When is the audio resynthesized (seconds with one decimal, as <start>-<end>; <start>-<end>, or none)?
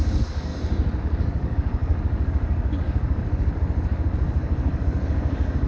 0.0-0.5; 1.0-5.7